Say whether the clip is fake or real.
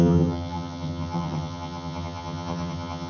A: fake